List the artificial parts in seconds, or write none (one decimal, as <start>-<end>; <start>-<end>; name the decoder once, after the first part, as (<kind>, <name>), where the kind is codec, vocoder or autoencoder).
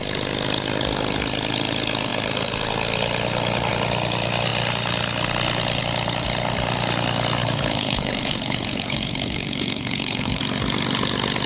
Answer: 7.4-10.4 (codec, HILCodec)